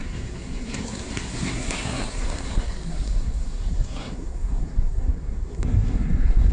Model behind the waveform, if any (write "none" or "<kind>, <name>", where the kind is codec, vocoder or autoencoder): codec, SNAC